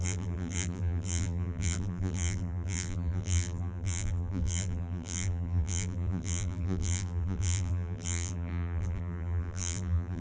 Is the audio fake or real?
fake